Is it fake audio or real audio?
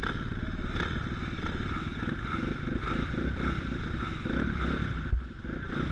real